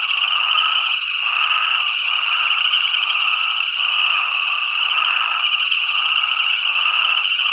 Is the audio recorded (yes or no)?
no